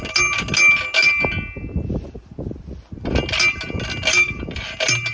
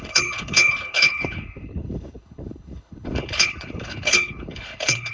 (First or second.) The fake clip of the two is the second